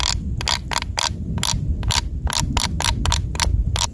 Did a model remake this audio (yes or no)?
no